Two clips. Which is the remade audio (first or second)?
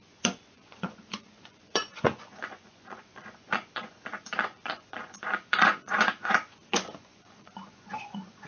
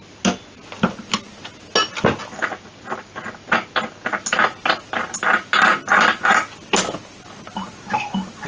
first